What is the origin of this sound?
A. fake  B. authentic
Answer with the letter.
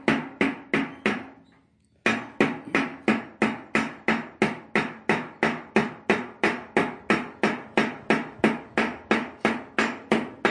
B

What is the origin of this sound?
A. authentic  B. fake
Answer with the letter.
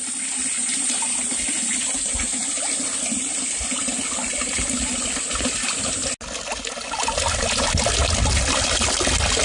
A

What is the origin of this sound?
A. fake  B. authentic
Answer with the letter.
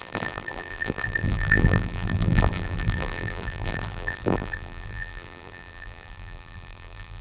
A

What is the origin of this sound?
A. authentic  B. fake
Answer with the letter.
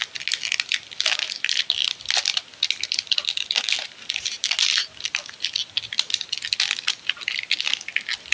A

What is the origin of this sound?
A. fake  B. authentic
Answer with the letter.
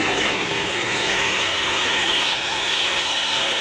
A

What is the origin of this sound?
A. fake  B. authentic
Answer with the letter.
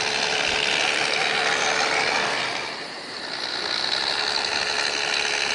B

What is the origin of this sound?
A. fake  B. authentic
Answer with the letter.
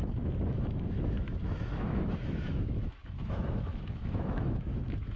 A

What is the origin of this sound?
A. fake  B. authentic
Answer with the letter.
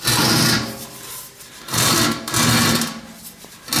B